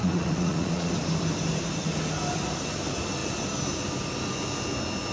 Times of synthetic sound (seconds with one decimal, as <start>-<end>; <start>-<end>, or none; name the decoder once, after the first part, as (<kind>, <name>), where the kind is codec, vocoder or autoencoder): 0.0-0.9 (vocoder, Vocos)